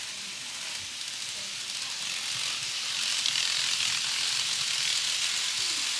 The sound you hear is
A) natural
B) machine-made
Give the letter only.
A